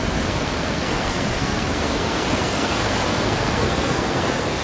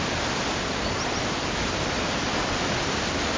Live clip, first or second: second